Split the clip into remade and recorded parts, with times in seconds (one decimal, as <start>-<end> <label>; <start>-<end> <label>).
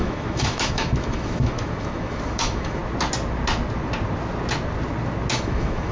0.0-2.8 remade; 2.8-5.3 recorded; 5.3-5.9 remade